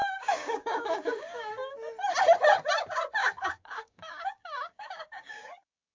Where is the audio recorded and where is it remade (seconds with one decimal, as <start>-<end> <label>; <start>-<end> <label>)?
0.0-1.5 remade; 1.5-3.2 recorded; 3.2-5.9 remade